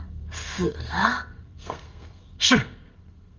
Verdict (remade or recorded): remade